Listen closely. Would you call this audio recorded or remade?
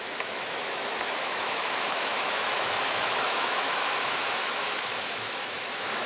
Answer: remade